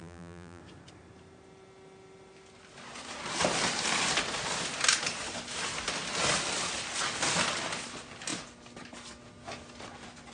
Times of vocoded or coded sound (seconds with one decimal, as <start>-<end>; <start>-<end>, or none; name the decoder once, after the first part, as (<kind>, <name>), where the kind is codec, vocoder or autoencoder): 0.0-0.6 (vocoder, BigVGAN v2)